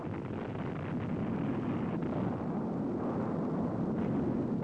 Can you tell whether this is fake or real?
real